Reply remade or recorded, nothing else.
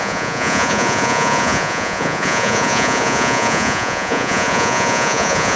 remade